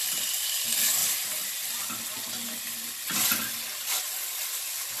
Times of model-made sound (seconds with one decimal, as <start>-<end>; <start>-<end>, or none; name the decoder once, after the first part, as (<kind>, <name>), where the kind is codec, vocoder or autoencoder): none